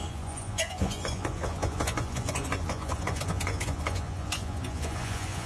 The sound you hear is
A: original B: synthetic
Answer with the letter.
B